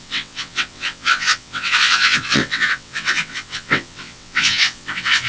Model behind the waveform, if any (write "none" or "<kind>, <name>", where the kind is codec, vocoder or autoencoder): vocoder, WaveNeXt